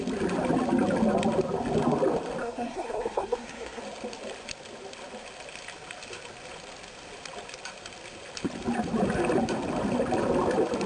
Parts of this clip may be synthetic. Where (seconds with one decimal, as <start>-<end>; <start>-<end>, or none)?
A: 2.4-3.8